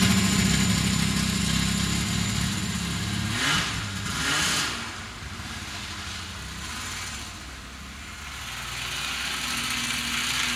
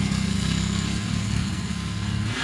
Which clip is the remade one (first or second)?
second